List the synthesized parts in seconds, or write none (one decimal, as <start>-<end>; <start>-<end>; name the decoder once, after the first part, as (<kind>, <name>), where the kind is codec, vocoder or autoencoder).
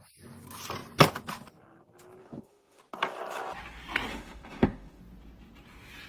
2.2-2.8 (autoencoder, DAC-VAE); 4.1-5.0